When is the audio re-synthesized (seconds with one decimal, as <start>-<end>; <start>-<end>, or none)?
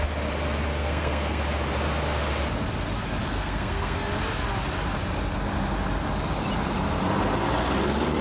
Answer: 0.8-1.4; 3.2-4.1